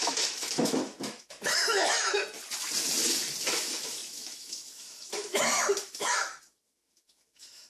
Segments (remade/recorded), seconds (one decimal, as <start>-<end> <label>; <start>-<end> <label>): 0.0-2.2 remade; 2.2-3.4 recorded; 3.4-7.7 remade